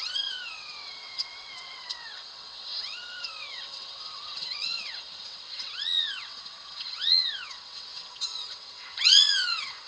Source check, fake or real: fake